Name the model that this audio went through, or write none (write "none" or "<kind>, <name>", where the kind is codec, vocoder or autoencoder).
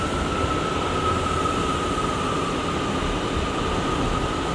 none